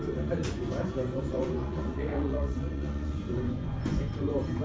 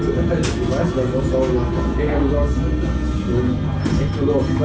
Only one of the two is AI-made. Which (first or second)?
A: first